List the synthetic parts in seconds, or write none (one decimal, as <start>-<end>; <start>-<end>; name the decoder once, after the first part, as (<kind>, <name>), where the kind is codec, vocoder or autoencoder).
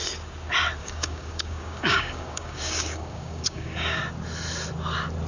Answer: 0.8-4.0 (codec, DAC)